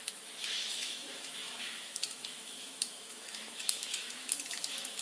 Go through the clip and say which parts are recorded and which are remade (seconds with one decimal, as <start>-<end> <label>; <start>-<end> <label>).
0.0-5.0 remade